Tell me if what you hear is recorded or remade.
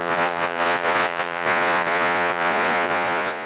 remade